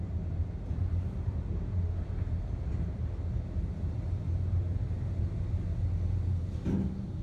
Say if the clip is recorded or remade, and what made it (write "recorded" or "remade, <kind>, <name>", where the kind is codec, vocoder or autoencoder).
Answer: recorded